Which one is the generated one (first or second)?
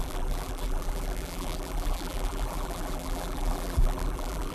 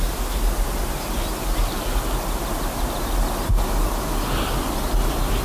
first